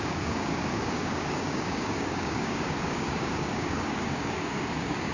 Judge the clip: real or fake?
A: fake